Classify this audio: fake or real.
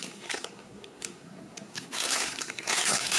fake